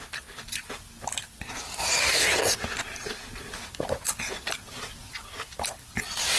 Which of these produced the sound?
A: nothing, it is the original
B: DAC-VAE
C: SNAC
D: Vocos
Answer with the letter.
A